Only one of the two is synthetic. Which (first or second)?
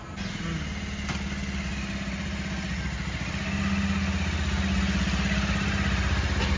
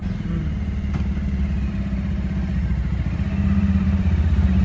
second